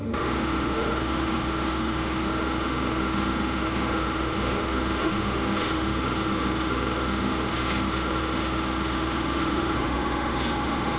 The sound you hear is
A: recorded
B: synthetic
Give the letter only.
B